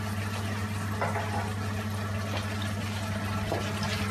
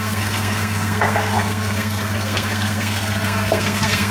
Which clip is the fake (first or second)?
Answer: second